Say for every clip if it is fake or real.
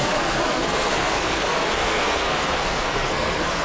fake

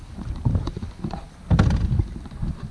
real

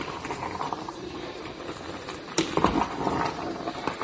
fake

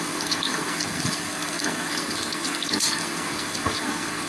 fake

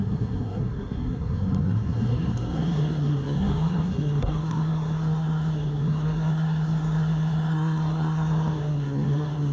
fake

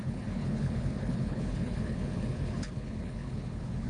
fake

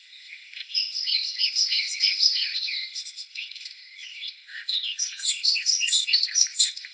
fake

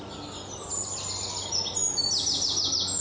real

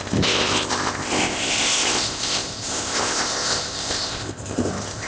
fake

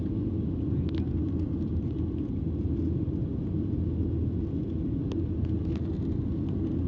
real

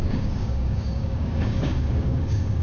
fake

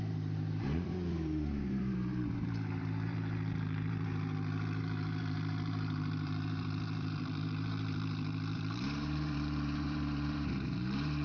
fake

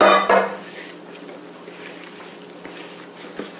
real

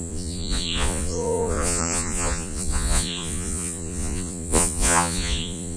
fake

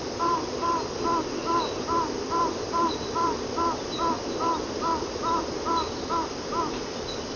real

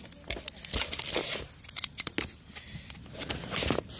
real